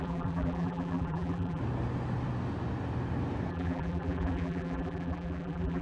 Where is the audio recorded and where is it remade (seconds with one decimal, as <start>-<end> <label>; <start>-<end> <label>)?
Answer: 0.0-1.6 remade; 1.6-3.5 recorded; 3.5-5.8 remade